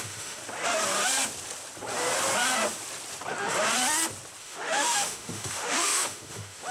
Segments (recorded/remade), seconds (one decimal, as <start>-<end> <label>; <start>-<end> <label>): 0.0-0.4 remade; 0.4-4.4 recorded; 4.4-6.7 remade